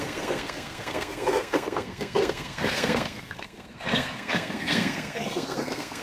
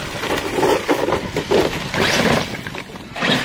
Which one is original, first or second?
second